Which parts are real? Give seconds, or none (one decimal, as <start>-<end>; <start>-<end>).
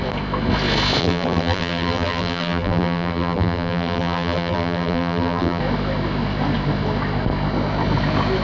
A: 0.0-1.0; 5.6-8.4